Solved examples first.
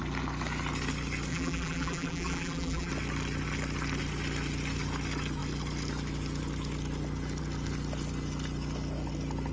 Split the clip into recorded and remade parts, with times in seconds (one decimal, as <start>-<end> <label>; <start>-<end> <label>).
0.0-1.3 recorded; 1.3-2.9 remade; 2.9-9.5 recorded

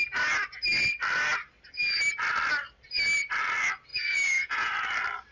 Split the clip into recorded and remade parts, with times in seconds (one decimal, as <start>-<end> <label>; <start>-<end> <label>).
0.0-3.9 recorded; 3.9-4.7 remade; 4.7-5.3 recorded

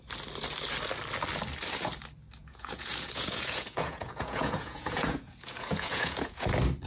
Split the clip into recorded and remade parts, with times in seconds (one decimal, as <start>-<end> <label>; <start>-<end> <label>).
0.0-2.4 recorded; 2.4-6.5 remade; 6.5-6.9 recorded

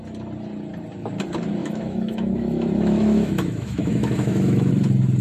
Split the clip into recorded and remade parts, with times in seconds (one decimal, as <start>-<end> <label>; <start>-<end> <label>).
0.0-1.6 recorded; 1.6-4.7 remade; 4.7-5.2 recorded

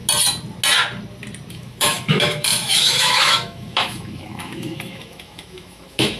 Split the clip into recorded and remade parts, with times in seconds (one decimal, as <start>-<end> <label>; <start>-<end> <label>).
0.0-1.5 recorded; 1.5-6.2 remade

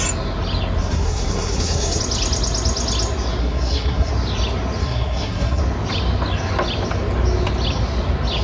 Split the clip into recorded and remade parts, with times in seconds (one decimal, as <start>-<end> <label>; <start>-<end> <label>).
0.0-0.8 recorded; 0.8-2.0 remade; 2.0-3.4 recorded; 3.4-4.1 remade; 4.1-4.8 recorded; 4.8-5.6 remade; 5.6-8.4 recorded